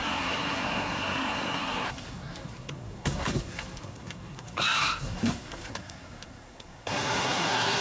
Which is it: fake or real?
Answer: fake